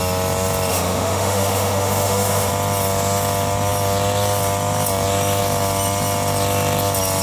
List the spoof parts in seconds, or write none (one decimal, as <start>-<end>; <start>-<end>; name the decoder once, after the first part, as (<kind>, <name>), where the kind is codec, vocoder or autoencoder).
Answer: 0.7-2.5 (autoencoder, DAC-VAE)